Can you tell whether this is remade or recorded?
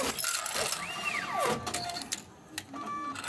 recorded